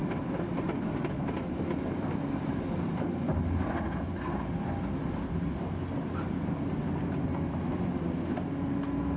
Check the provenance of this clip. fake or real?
real